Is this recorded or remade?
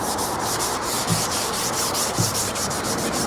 remade